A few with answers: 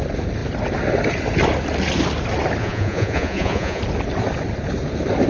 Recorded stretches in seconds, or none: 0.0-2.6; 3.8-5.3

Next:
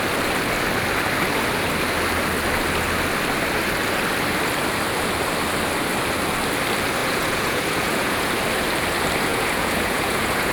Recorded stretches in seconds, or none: 0.0-7.0; 8.3-9.3

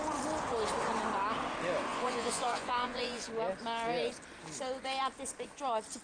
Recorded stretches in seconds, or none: 0.0-1.9; 3.3-6.0

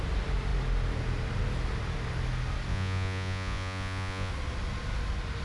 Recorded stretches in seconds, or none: 0.0-2.7; 4.3-5.4

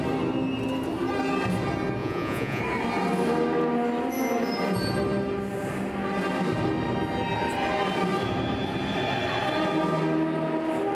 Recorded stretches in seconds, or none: 0.0-2.0; 2.6-10.9

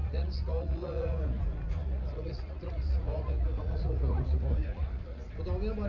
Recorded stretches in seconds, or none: 1.4-1.8; 5.3-5.9